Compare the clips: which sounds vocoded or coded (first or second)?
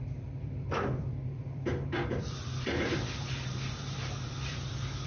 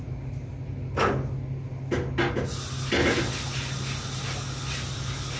first